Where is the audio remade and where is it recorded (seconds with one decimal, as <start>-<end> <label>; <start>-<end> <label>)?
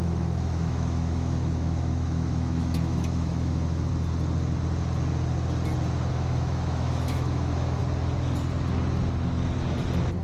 0.0-3.9 remade; 3.9-6.1 recorded; 6.1-7.8 remade; 7.8-10.2 recorded